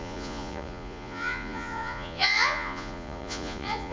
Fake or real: fake